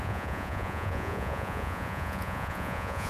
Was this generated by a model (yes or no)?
yes